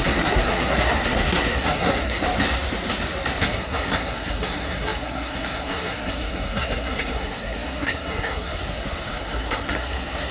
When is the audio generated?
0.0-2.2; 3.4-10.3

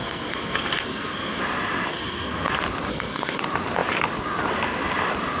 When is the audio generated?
0.0-1.4; 1.9-2.5; 2.9-3.4